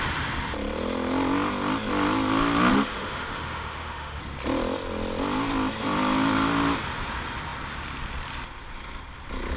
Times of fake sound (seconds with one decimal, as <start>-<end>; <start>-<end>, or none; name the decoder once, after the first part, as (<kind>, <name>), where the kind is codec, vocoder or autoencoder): 2.7-4.2 (autoencoder, DAC-VAE)